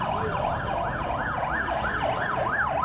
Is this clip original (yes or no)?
yes